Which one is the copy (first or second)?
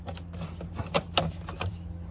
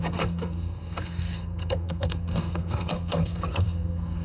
second